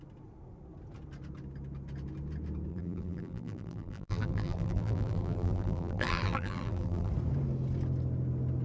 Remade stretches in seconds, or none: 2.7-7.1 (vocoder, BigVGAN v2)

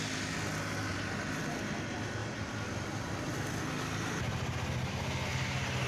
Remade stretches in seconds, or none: 0.9-1.5 (vocoder, BigVGAN v2); 2.2-4.9

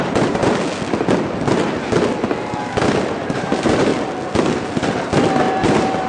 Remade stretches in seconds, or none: 0.0-0.4 (vocoder, BigVGAN v2); 3.3-3.9; 5.5-6.1

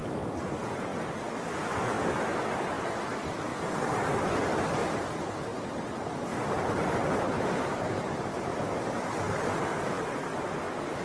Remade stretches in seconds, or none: 3.5-4.3 (vocoder, BigVGAN v2); 4.8-9.1

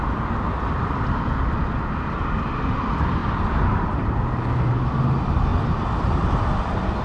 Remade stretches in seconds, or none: 3.2-4.8 (vocoder, BigVGAN v2)

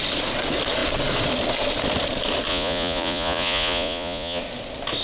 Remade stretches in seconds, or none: 2.5-4.4 (vocoder, Vocos)